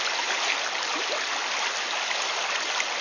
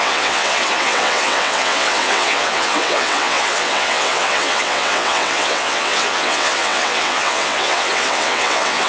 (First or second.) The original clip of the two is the first